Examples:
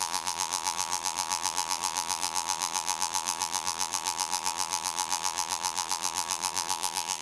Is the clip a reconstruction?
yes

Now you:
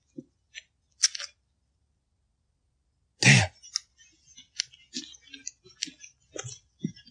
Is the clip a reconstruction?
no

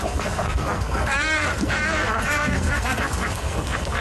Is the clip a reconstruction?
yes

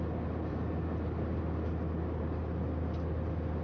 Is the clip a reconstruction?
no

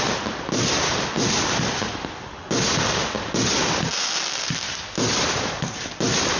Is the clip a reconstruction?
no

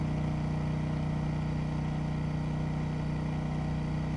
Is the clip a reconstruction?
no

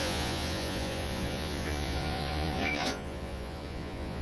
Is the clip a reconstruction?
yes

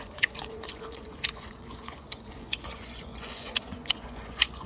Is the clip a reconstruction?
yes